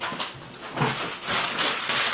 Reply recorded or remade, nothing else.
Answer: recorded